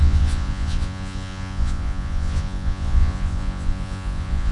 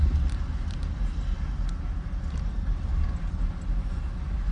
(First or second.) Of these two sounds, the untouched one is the second